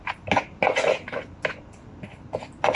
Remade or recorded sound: recorded